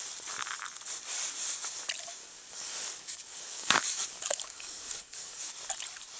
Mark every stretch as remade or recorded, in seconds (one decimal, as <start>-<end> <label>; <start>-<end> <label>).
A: 0.0-2.2 recorded; 2.2-5.5 remade; 5.5-6.2 recorded